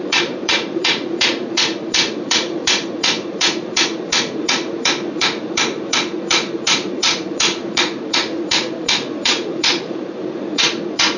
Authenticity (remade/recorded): remade